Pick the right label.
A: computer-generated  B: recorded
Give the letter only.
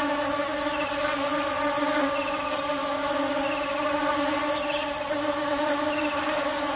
B